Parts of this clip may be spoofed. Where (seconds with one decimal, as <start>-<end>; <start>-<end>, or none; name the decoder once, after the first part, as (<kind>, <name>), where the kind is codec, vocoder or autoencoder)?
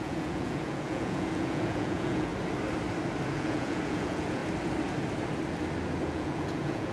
0.0-2.3 (vocoder, Vocos); 3.3-4.4; 6.0-6.9